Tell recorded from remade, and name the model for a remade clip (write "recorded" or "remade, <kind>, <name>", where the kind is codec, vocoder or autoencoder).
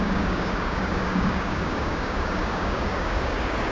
remade, codec, DAC